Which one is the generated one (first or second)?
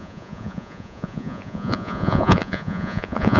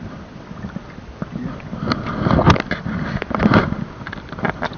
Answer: first